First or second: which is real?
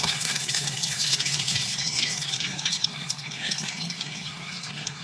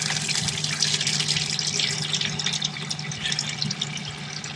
second